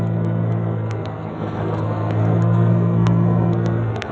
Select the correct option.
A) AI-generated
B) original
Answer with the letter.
A